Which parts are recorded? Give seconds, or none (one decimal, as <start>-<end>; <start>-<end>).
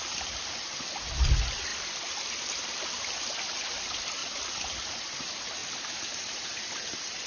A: 0.0-7.3